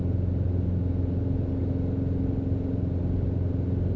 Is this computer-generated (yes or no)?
no